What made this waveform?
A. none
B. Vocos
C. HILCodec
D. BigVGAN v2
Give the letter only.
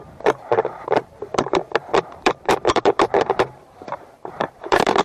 D